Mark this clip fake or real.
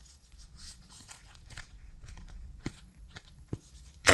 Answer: fake